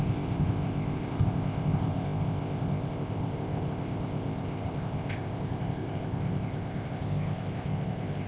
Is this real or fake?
fake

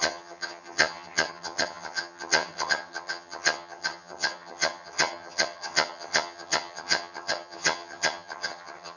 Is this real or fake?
fake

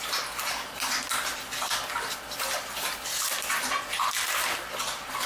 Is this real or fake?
real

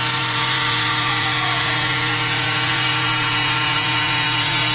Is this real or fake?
fake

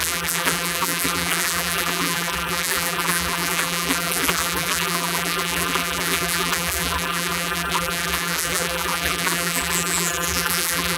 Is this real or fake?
fake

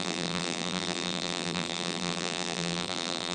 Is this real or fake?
fake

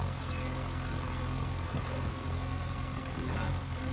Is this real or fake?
fake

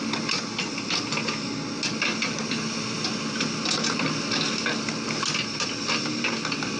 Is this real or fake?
real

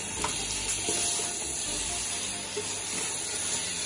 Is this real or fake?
real